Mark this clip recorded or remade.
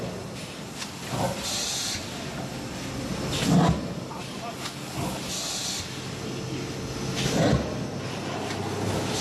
recorded